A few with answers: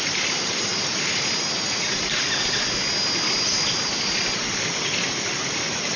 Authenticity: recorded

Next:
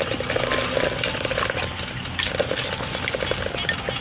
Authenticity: recorded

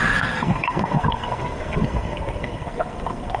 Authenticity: remade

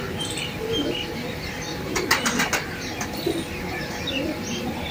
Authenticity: recorded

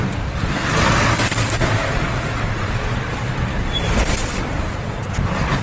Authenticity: recorded